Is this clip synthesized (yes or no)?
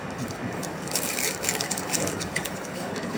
yes